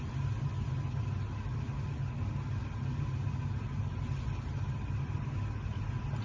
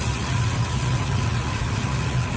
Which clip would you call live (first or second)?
first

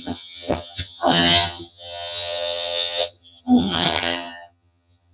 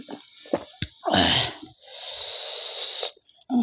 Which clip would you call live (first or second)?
second